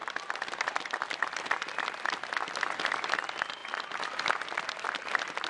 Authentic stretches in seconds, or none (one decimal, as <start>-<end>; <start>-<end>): 0.0-3.6; 4.4-5.5